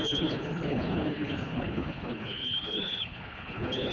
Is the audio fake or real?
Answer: fake